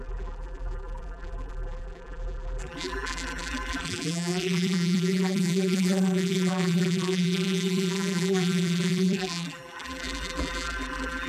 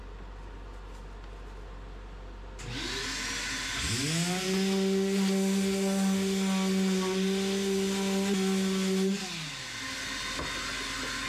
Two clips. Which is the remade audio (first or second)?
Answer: first